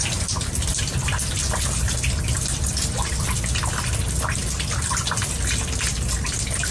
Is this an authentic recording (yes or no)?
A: yes